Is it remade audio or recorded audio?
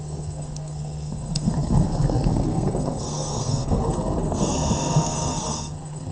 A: remade